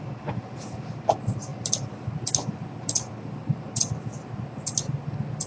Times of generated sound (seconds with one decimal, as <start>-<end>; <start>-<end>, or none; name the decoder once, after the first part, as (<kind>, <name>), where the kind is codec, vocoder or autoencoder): none